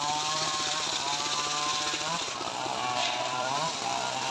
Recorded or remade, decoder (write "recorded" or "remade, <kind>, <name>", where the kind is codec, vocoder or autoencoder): remade, vocoder, BigVGAN v2